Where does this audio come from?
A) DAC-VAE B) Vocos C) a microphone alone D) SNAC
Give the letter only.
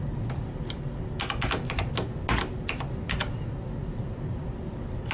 C